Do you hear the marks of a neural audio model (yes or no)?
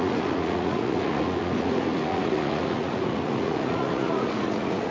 yes